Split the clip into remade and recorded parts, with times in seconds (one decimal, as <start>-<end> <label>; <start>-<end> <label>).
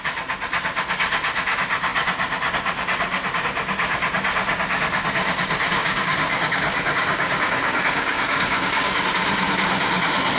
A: 0.0-5.8 recorded; 5.8-9.0 remade; 9.0-10.4 recorded